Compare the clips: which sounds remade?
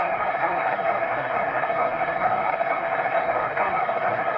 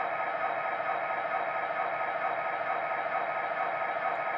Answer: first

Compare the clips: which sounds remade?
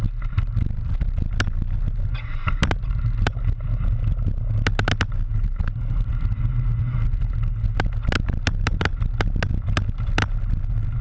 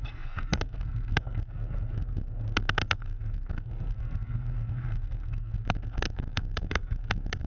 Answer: second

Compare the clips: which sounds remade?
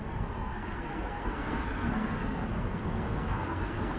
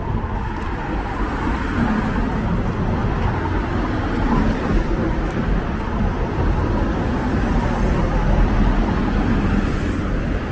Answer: first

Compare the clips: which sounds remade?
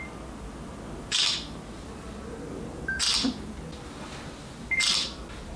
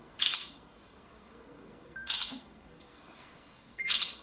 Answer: second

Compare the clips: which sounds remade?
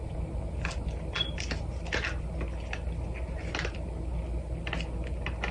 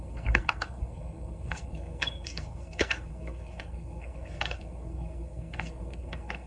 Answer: second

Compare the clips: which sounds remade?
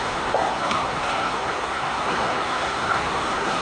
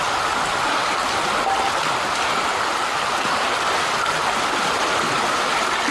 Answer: first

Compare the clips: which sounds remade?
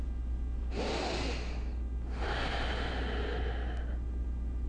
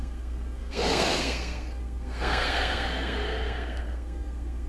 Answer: second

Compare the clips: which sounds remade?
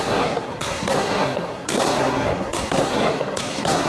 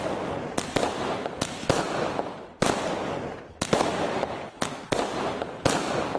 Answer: first